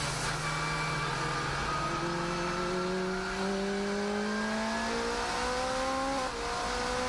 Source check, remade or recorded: recorded